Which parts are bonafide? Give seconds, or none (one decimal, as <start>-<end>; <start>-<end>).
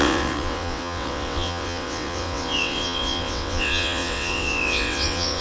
none